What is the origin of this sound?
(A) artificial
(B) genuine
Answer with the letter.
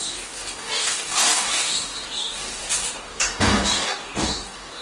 A